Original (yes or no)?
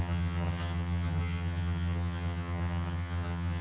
no